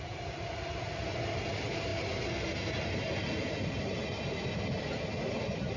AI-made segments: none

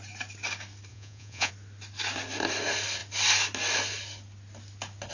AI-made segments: 0.9-1.5 (vocoder, Vocos)